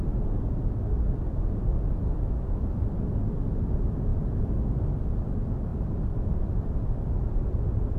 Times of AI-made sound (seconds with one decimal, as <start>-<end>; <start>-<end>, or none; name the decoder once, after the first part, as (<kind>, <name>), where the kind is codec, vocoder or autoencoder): 1.7-2.3 (vocoder, BigVGAN v2); 4.1-5.0; 5.7-8.0